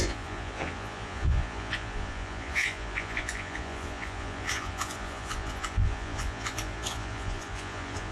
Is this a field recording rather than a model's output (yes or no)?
no